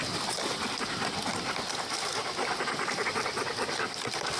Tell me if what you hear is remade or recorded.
recorded